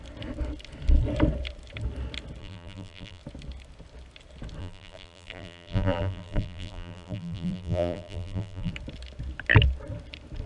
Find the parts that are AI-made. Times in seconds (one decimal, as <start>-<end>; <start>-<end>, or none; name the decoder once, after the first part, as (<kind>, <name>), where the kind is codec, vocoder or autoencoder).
2.4-3.2 (vocoder, BigVGAN v2); 4.6-8.7